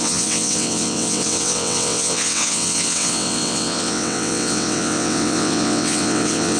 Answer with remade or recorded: remade